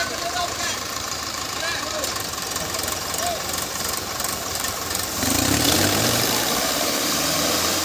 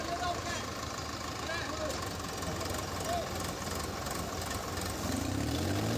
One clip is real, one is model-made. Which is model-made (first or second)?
first